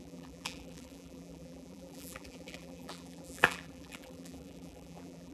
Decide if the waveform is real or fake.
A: fake